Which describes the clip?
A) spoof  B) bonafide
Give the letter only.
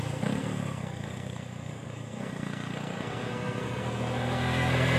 A